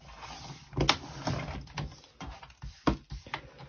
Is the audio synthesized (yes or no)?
no